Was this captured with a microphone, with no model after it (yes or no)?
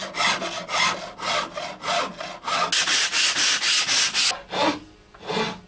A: yes